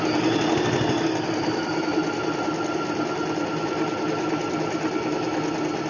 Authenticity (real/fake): real